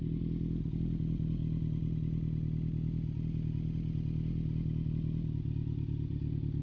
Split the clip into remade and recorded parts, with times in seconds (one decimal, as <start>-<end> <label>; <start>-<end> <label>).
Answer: 0.0-6.6 recorded